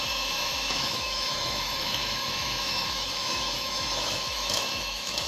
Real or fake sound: fake